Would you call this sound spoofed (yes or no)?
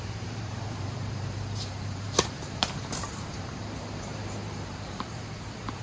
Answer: yes